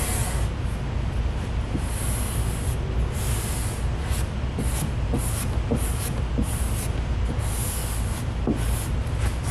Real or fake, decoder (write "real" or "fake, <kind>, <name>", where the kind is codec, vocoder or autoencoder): real